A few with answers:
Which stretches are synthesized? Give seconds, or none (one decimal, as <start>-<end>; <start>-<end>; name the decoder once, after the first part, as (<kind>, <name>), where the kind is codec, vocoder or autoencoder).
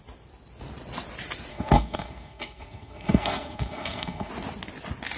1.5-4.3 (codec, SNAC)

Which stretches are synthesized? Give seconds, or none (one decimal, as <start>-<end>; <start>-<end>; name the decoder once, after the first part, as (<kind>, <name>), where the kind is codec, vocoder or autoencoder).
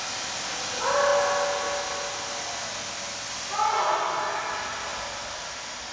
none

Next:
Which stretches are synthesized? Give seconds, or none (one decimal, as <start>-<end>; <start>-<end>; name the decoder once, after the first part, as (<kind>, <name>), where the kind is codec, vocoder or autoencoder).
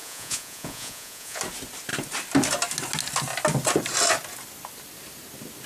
0.0-1.4 (vocoder, Vocos)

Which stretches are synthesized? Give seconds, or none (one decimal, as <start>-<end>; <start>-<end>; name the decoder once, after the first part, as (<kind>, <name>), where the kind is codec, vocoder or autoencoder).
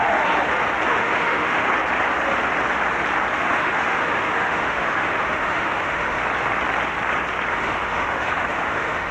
0.9-1.7 (autoencoder, DAC-VAE); 3.3-6.2; 7.5-9.1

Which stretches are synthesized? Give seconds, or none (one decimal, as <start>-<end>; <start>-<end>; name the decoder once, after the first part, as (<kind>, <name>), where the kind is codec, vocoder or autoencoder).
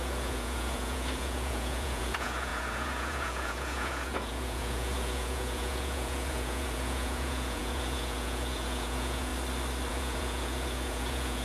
0.0-9.3 (vocoder, Vocos); 9.9-11.4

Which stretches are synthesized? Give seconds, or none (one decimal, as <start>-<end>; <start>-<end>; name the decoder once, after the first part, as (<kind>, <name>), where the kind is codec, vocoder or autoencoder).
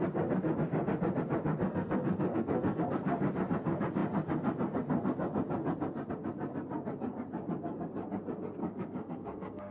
1.7-2.8 (codec, SNAC); 8.6-9.7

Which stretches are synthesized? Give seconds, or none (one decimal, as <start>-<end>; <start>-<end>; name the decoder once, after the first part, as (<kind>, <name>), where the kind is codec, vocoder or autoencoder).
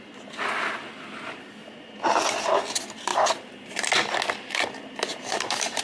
3.1-3.9 (vocoder, BigVGAN v2); 5.1-5.8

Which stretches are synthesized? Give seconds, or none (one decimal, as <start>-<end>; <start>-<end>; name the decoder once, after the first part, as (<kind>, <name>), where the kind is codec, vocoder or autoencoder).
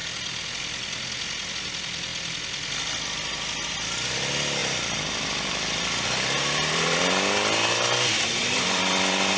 4.6-7.0 (vocoder, BigVGAN v2)